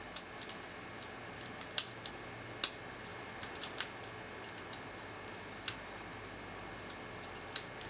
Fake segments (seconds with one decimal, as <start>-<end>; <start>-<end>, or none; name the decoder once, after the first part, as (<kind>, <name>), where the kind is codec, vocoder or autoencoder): 1.2-2.1 (vocoder, BigVGAN v2); 3.1-3.8